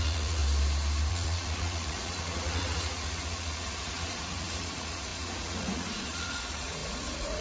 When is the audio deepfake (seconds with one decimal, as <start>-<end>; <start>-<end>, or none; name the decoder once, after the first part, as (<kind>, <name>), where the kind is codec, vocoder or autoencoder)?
0.0-0.4 (vocoder, Vocos); 1.1-7.4